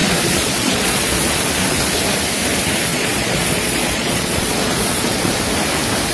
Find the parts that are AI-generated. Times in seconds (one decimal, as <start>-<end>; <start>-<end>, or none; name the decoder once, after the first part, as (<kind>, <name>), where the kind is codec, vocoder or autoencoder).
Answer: 0.0-1.3 (vocoder, Vocos); 2.9-5.3

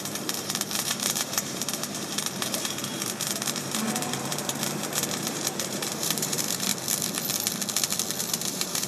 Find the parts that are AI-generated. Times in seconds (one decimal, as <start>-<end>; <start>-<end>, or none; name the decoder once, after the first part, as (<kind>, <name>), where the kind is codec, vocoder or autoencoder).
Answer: 0.0-6.7 (vocoder, BigVGAN v2); 8.2-8.9

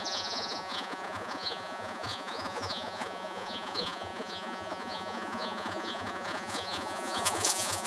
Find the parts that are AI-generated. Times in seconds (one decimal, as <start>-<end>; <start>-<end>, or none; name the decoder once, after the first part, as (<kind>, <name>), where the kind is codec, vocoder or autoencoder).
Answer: 0.0-7.9 (vocoder, Vocos)

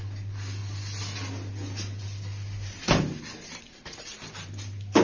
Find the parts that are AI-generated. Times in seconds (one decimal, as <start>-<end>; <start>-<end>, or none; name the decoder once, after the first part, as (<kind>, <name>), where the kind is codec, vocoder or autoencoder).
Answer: none

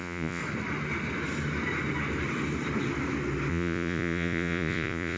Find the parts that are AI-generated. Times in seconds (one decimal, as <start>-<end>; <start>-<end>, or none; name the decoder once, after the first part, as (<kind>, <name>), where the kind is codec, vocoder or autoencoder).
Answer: 0.0-0.4 (vocoder, Vocos); 3.5-5.2

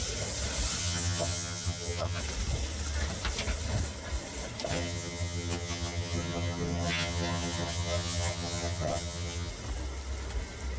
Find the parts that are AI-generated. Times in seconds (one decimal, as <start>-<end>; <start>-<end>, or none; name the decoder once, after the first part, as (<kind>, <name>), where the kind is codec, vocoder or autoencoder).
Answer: 0.8-2.2 (vocoder, HiFi-GAN); 4.7-9.5